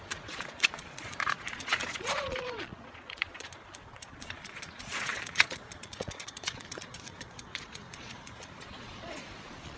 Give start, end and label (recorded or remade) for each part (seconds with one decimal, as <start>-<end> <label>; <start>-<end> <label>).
0.0-9.8 remade